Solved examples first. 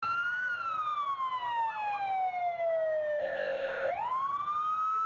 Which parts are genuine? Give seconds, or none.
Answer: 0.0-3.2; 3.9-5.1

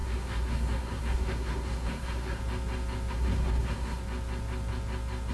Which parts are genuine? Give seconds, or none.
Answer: 2.4-3.1; 4.0-5.3